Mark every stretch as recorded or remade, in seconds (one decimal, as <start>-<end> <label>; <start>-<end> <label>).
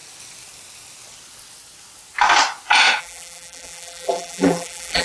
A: 0.0-3.0 recorded; 3.0-5.0 remade